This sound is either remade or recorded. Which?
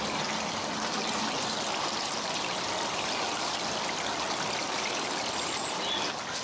recorded